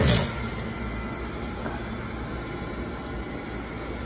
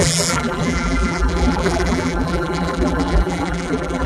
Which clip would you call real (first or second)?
first